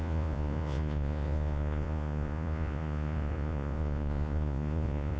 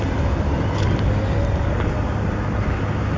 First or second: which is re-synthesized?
first